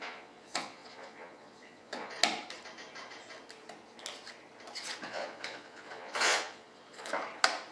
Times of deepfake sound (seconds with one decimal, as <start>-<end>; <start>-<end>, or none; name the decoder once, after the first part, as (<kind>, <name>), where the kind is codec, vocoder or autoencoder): 0.0-2.2 (vocoder, Vocos); 5.0-7.1